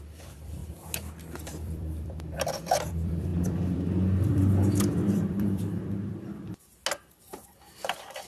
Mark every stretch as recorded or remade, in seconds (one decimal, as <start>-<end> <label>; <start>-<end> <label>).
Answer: 0.0-0.6 remade; 0.6-1.2 recorded; 1.2-6.7 remade; 6.7-7.2 recorded; 7.2-8.3 remade